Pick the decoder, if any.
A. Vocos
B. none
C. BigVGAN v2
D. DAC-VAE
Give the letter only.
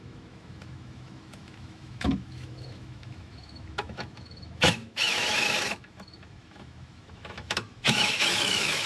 D